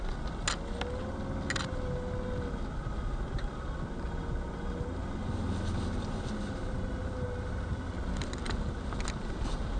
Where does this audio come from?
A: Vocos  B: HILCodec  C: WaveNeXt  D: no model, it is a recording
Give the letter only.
D